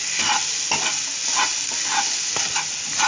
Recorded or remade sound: recorded